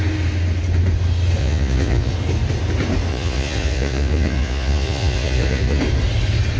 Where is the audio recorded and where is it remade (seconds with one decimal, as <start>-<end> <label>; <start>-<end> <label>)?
0.0-1.4 recorded; 1.4-2.1 remade; 2.1-3.1 recorded; 3.1-5.8 remade; 5.8-6.6 recorded

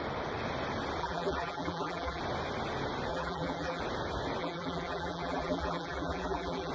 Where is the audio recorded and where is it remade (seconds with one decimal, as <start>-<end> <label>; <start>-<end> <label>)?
0.0-1.0 recorded; 1.0-2.2 remade; 2.2-3.1 recorded; 3.1-3.8 remade; 3.8-4.4 recorded; 4.4-6.7 remade

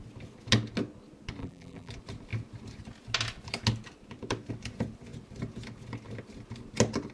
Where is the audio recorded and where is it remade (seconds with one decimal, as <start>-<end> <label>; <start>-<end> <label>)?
0.0-1.4 recorded; 1.4-1.9 remade; 1.9-7.1 recorded

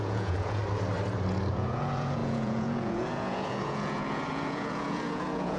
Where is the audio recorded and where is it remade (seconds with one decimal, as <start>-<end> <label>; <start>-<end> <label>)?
0.0-0.6 remade; 0.6-1.5 recorded; 1.5-5.6 remade

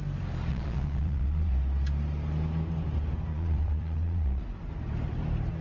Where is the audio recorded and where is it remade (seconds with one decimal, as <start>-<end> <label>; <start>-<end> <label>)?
0.0-0.5 recorded; 0.5-1.5 remade; 1.5-3.3 recorded; 3.3-4.4 remade; 4.4-5.6 recorded

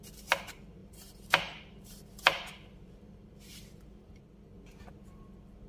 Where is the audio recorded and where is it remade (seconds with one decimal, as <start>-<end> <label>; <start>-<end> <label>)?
0.0-0.8 recorded; 0.8-4.2 remade; 4.2-5.7 recorded

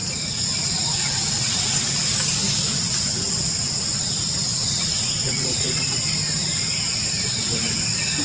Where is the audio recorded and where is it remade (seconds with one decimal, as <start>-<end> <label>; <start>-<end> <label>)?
0.0-1.9 remade; 1.9-4.5 recorded; 4.5-5.8 remade; 5.8-8.2 recorded